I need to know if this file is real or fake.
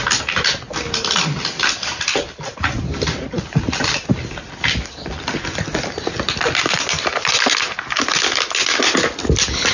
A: real